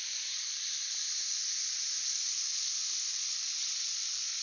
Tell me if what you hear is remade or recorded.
recorded